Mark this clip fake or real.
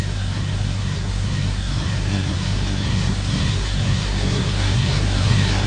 fake